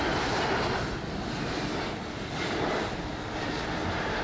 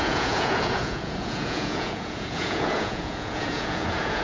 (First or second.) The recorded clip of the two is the first